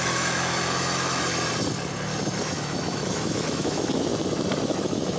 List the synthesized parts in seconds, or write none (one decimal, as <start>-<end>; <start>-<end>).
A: 0.0-1.3; 2.4-4.1; 4.6-5.2